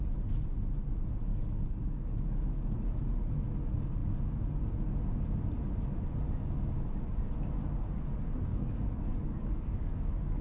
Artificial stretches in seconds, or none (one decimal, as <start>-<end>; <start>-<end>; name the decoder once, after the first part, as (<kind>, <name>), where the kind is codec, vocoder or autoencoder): 1.3-2.9 (codec, DAC); 8.5-10.4